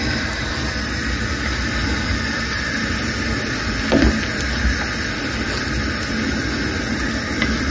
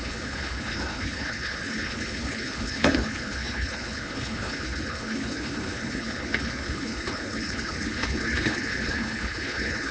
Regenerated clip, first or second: second